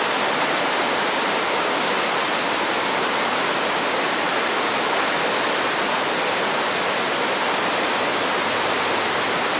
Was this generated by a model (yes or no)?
no